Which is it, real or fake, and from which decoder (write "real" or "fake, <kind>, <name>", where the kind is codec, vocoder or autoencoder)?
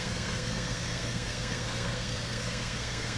fake, codec, SNAC